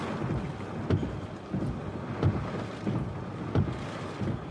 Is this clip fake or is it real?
real